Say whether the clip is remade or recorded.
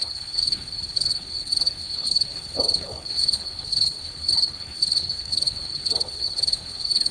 remade